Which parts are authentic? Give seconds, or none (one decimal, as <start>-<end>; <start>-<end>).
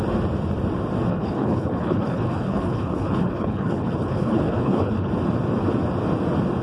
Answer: 0.0-1.1; 5.1-6.6